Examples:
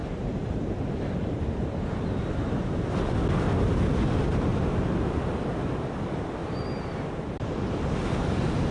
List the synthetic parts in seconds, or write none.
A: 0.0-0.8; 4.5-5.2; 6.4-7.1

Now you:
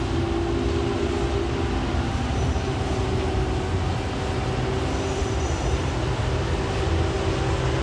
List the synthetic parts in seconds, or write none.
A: 2.1-2.9; 5.2-6.1

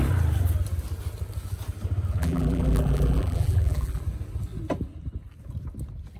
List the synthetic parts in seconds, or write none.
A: 2.2-4.0

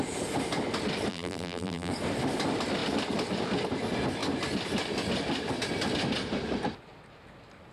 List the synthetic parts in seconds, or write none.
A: 1.1-1.9

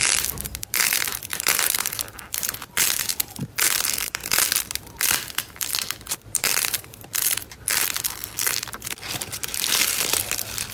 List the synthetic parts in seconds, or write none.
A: 0.0-4.2; 5.4-10.7

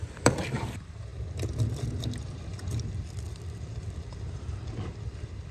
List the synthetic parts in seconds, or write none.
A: 0.0-5.5

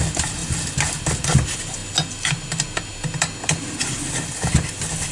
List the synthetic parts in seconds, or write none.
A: none